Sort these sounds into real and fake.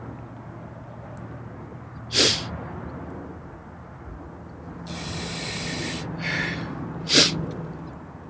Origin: real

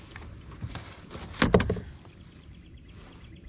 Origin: real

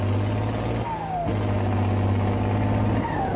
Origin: real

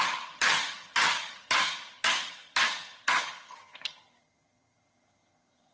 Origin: fake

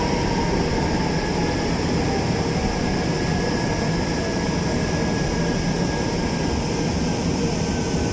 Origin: real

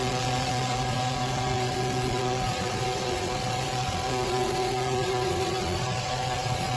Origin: fake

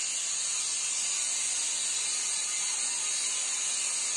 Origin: real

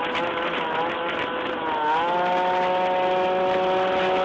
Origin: real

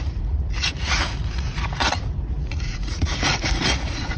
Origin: fake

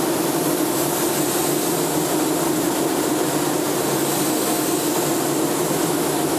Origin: real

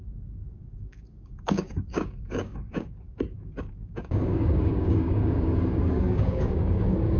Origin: fake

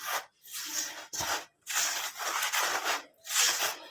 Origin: real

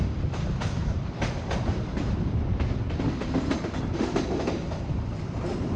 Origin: fake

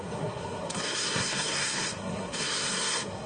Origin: fake